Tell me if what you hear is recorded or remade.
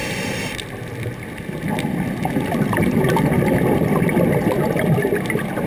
recorded